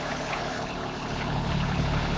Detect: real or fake fake